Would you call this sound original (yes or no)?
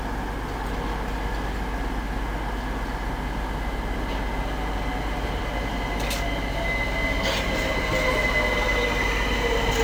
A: yes